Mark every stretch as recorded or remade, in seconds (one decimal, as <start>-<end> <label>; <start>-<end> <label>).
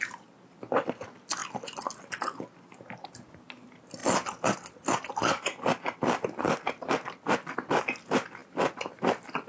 0.0-8.4 recorded; 8.4-9.5 remade